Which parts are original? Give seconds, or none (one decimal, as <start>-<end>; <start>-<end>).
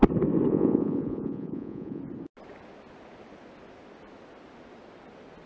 0.0-0.5; 2.0-5.5